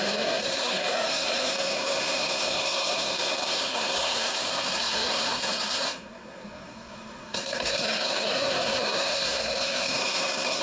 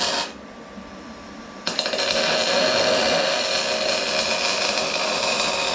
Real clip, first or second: second